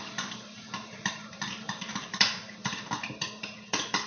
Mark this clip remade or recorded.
remade